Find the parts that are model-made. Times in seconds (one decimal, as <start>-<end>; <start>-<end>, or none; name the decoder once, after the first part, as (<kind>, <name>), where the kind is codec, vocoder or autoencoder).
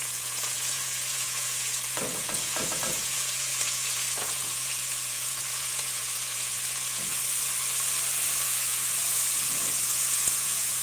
0.0-7.2 (vocoder, Vocos); 8.4-10.8